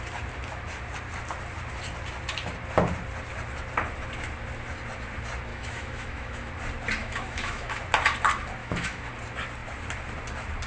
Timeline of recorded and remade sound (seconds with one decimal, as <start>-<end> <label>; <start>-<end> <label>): 0.0-5.5 recorded; 5.5-6.5 remade; 6.5-7.0 recorded; 7.0-7.8 remade; 7.8-8.6 recorded; 8.6-9.1 remade; 9.1-10.7 recorded